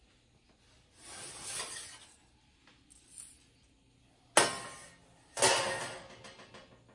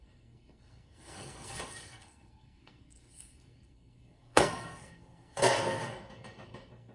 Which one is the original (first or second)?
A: first